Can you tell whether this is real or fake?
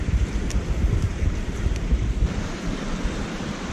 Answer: fake